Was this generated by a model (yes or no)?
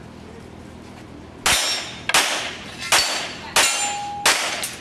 no